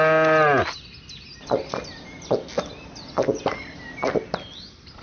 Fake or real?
real